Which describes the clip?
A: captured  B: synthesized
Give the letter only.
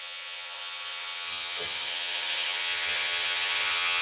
B